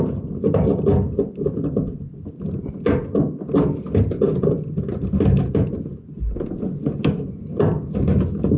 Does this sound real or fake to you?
real